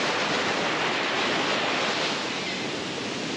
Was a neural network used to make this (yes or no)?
no